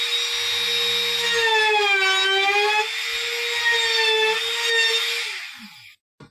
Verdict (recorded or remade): recorded